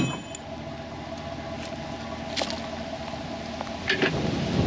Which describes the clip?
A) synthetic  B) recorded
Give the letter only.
B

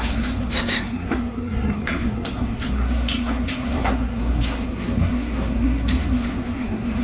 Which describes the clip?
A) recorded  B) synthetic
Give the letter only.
B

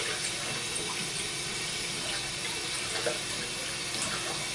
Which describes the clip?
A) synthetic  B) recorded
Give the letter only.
B